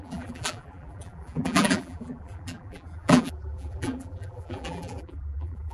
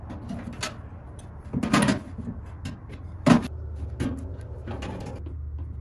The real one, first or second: second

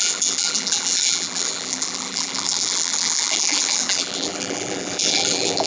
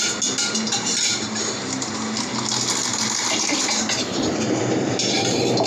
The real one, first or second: second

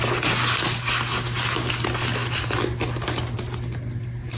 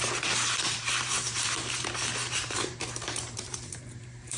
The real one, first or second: first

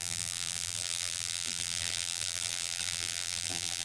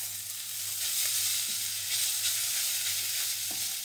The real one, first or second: second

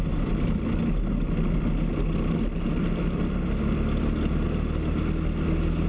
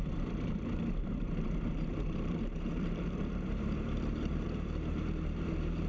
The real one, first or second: first